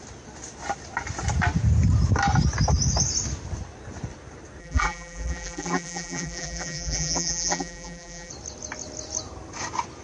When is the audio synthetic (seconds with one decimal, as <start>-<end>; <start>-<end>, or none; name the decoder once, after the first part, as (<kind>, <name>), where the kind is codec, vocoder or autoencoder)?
4.6-8.3 (vocoder, BigVGAN v2)